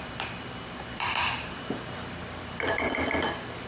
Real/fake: fake